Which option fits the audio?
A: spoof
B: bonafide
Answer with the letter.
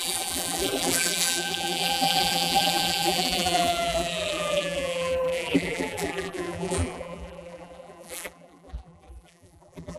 A